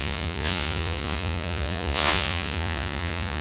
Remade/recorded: remade